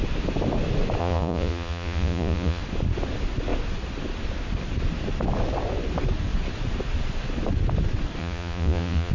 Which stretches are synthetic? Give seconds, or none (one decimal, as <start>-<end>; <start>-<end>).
1.0-2.6; 8.2-9.1